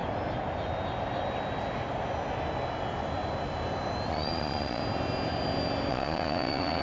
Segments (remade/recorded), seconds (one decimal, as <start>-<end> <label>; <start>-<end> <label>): 0.0-4.1 recorded; 4.1-4.8 remade; 4.8-5.9 recorded; 5.9-6.8 remade